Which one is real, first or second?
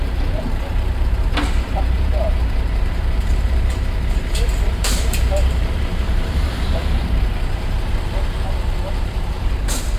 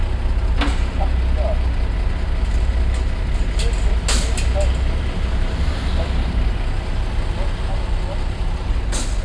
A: second